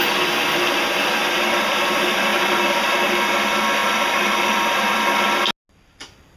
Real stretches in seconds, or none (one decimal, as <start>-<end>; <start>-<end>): 0.0-2.3; 3.0-6.4